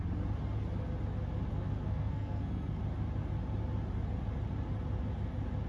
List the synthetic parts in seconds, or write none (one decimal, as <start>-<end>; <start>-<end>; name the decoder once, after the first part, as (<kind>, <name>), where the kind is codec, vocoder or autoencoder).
1.5-2.8 (codec, SNAC)